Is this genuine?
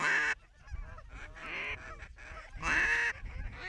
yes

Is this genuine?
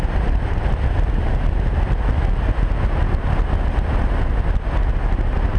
yes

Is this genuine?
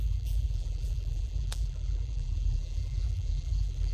no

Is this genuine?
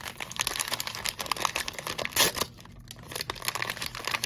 yes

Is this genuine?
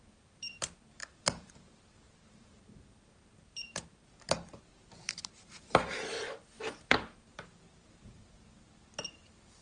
no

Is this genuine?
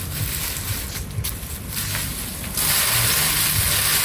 yes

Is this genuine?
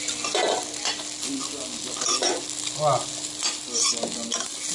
yes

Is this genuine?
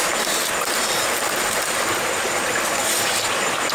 yes